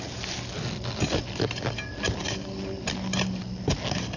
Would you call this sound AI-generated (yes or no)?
no